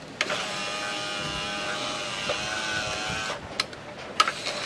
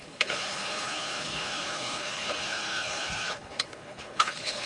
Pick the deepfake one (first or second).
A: second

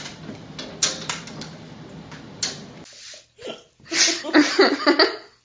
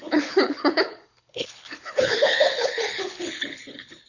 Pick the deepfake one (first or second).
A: second